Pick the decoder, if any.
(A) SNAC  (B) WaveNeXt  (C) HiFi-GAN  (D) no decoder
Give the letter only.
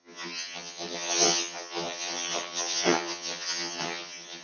C